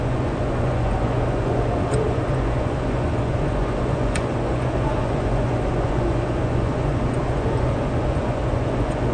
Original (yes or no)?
no